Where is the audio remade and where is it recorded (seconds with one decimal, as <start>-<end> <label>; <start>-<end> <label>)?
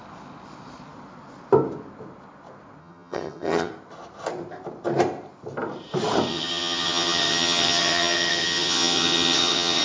0.0-2.8 recorded; 2.8-3.7 remade; 3.7-6.3 recorded; 6.3-9.8 remade